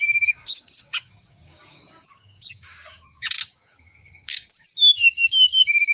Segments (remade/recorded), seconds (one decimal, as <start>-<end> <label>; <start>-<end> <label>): 0.0-5.9 remade